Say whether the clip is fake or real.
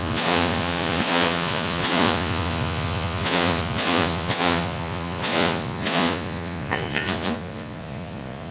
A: fake